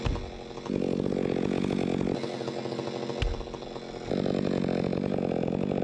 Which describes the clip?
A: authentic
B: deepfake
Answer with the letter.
A